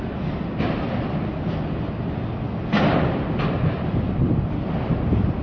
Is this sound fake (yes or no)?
no